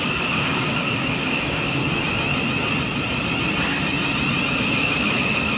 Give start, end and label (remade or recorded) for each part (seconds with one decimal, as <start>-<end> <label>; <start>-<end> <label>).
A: 0.0-1.8 remade; 1.8-4.5 recorded; 4.5-5.6 remade